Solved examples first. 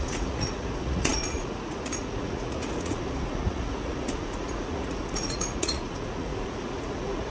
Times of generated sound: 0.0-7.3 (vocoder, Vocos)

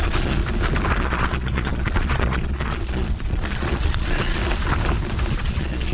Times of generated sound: 0.0-0.4 (vocoder, Vocos); 1.0-4.4; 5.3-5.9